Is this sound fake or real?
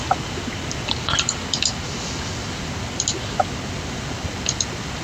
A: real